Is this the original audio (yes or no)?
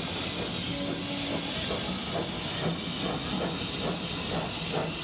yes